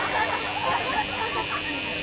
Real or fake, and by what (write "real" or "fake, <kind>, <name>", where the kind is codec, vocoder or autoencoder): real